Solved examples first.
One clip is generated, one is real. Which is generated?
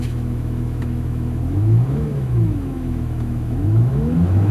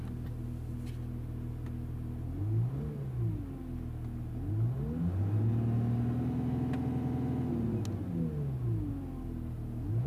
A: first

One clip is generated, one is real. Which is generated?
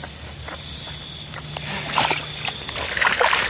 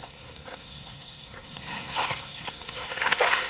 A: second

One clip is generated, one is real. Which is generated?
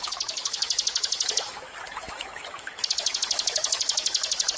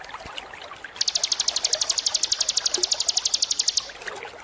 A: first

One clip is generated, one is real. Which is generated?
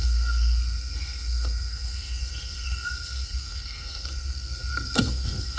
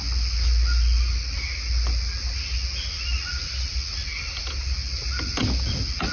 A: first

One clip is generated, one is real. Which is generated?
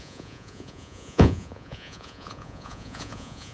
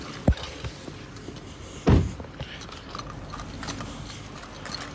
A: first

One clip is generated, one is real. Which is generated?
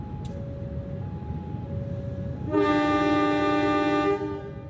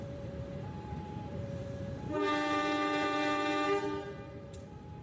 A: second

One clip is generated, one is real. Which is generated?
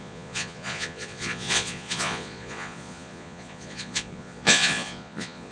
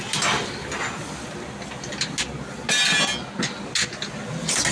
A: first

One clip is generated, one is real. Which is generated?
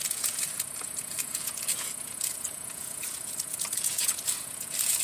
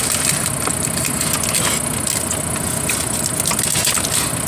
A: first